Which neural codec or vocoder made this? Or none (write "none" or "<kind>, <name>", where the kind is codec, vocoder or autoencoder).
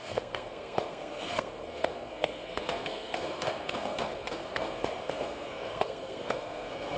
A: codec, SNAC